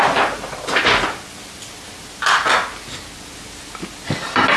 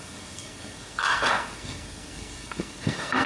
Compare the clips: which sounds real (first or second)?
first